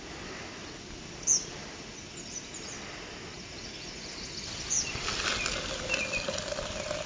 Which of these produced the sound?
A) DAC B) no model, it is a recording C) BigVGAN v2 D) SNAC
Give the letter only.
B